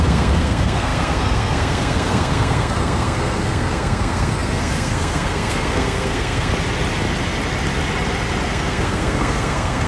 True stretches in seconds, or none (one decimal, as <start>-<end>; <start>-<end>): 6.5-8.5

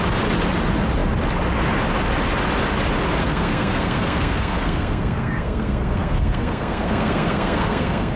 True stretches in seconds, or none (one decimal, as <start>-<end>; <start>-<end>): 0.0-3.2

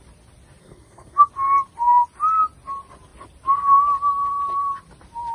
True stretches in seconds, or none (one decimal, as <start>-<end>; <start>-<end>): 0.0-0.6; 1.3-5.3

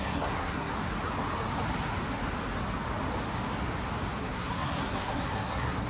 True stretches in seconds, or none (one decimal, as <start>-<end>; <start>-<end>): 0.7-4.2

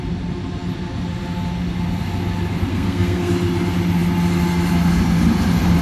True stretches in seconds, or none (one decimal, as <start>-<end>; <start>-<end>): 0.0-2.7; 3.3-5.8

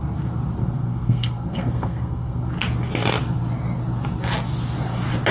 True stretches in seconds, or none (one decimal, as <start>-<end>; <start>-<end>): 0.0-0.6; 2.5-5.3

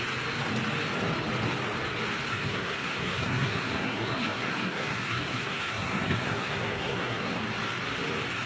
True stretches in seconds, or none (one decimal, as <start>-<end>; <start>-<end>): 0.0-2.3; 7.4-8.5

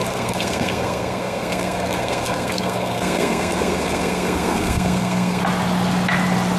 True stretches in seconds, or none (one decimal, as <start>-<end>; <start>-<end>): 5.4-6.6